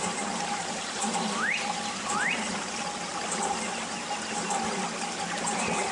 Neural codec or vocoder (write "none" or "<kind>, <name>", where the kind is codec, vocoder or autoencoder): none